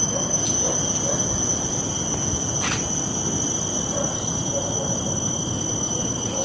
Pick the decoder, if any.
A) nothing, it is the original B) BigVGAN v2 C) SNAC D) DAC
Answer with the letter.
A